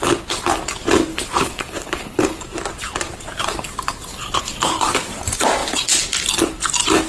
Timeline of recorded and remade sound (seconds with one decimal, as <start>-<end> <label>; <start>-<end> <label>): 0.0-1.1 recorded; 1.1-2.4 remade; 2.4-4.1 recorded; 4.1-4.9 remade; 4.9-7.1 recorded